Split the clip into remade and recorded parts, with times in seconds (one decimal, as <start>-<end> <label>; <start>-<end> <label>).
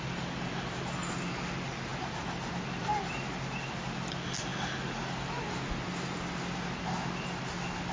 0.0-7.9 recorded